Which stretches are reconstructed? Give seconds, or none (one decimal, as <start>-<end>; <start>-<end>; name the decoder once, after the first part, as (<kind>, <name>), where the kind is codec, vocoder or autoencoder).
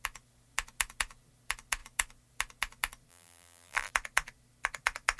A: 3.1-3.9 (vocoder, BigVGAN v2)